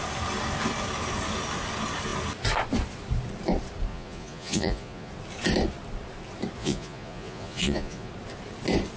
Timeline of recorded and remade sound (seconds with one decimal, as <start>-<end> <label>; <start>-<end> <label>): 0.0-3.9 recorded; 3.9-5.1 remade; 5.1-6.6 recorded; 6.6-8.1 remade; 8.1-9.0 recorded